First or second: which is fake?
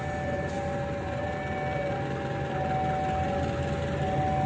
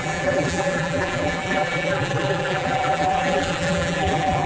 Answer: second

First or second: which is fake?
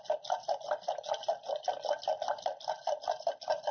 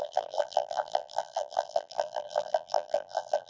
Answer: second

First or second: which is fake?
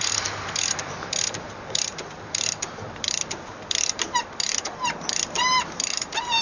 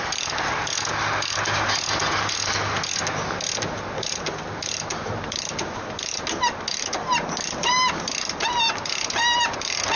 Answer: first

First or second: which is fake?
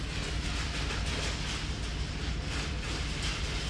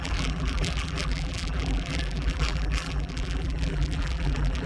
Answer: second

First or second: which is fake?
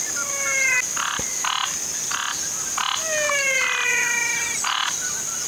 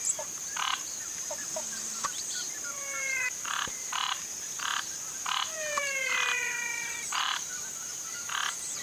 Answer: second